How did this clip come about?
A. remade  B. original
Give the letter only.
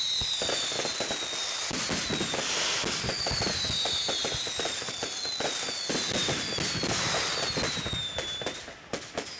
B